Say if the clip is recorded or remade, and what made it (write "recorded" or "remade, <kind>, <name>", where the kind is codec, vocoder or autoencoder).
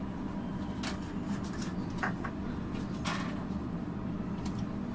recorded